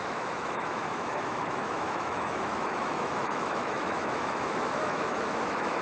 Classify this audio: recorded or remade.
remade